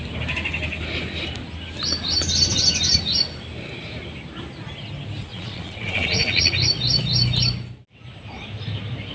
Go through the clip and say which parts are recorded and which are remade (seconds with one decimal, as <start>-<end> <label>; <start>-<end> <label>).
0.0-5.3 recorded; 5.3-6.5 remade; 6.5-9.1 recorded